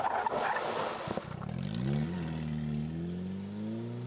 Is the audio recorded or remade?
recorded